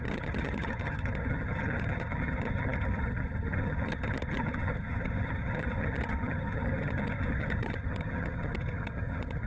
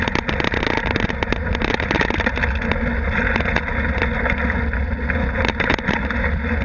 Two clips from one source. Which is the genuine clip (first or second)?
second